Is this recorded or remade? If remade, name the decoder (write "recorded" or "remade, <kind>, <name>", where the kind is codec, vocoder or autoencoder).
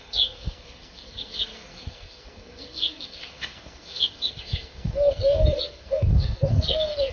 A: remade, codec, SNAC